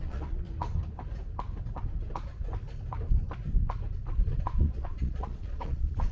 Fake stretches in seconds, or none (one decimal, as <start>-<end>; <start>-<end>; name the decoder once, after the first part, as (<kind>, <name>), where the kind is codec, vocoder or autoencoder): 0.0-0.4 (vocoder, Vocos); 4.1-6.1